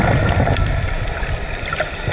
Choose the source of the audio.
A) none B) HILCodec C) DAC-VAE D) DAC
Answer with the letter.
A